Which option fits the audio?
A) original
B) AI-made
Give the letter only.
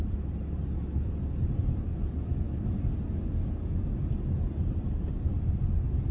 A